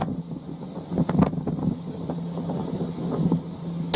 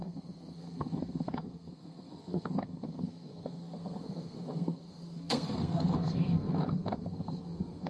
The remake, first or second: second